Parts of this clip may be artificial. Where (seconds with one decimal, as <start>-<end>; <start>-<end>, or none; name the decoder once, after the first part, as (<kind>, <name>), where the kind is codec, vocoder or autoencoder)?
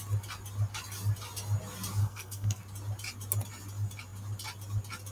2.0-2.6 (codec, SNAC)